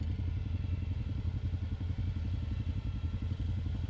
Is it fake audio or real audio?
real